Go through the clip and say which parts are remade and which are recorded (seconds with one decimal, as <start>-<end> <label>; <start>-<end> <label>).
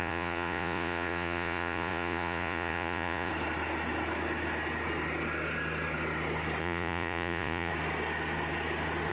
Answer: 0.0-3.3 remade; 3.3-6.6 recorded; 6.6-7.7 remade; 7.7-9.1 recorded